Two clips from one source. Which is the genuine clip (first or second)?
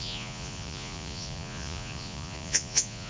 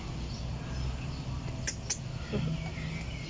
second